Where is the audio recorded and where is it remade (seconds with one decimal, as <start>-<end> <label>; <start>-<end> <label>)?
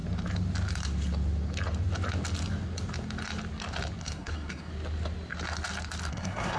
0.0-4.0 recorded; 4.0-4.7 remade; 4.7-6.1 recorded; 6.1-6.6 remade